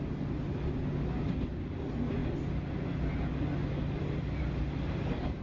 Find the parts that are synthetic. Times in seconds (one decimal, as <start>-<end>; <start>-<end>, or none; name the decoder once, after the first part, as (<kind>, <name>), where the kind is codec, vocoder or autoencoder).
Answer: none